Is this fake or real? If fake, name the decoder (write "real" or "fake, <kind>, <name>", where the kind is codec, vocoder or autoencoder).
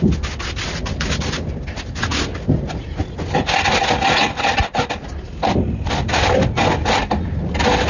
real